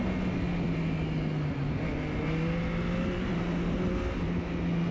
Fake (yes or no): no